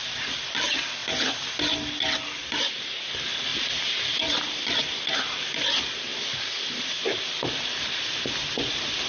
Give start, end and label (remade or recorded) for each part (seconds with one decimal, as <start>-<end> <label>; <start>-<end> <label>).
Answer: 0.0-3.5 recorded; 3.5-5.1 remade; 5.1-6.1 recorded; 6.1-8.7 remade; 8.7-9.1 recorded